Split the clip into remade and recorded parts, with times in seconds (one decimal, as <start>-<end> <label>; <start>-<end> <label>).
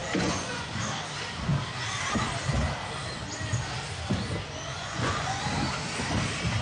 0.0-0.8 remade; 0.8-4.7 recorded; 4.7-5.4 remade; 5.4-6.6 recorded